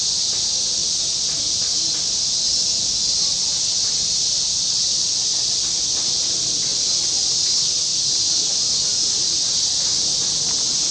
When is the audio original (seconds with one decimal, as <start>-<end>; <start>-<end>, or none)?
0.0-7.9; 8.6-10.9

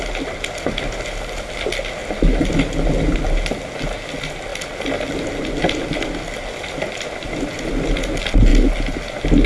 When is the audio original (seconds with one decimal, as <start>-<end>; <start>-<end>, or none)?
0.0-9.5

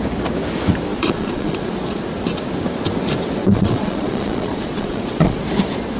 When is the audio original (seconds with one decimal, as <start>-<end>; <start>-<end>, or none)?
0.0-0.9; 2.0-3.4; 5.4-6.0